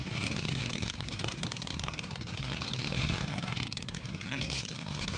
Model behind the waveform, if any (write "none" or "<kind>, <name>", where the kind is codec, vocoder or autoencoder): codec, SNAC